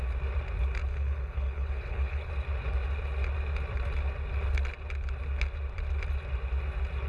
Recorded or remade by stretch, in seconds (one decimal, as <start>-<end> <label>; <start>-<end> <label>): 0.0-0.9 recorded; 0.9-2.3 remade; 2.3-7.1 recorded